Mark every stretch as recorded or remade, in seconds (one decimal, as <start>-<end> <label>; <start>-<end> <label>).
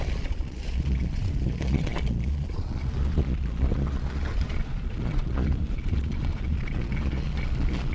0.0-7.9 remade